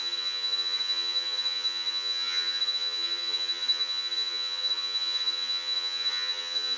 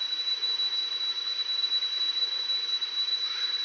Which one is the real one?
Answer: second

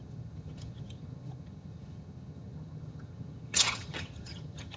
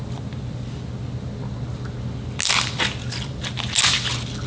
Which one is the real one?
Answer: second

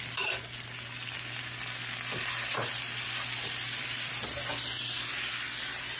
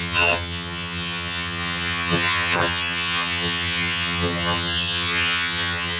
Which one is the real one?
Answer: first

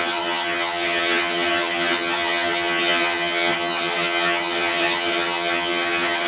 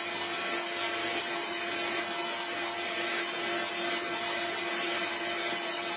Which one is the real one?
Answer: second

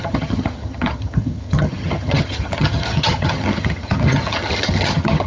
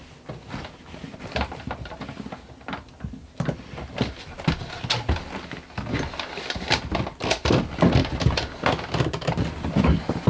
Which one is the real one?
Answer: second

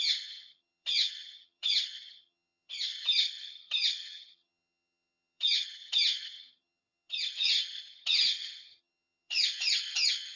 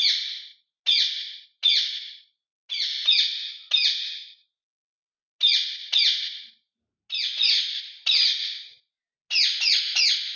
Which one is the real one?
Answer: second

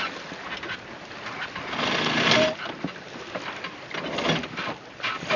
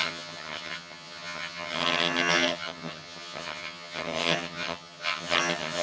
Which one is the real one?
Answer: first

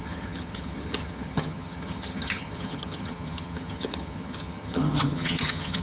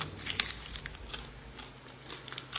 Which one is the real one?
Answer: second